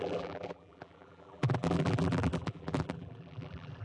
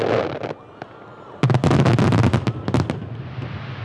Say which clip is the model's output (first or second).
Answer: first